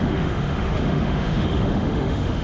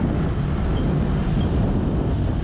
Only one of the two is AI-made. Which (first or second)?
first